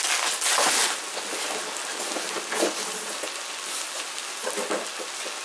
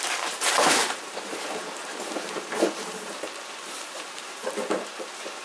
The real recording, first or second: first